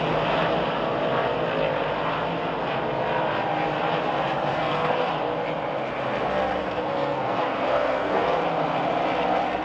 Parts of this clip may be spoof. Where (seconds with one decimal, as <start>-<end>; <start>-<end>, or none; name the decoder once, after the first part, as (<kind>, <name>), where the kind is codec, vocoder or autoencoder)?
4.5-5.1 (codec, SNAC); 6.6-8.4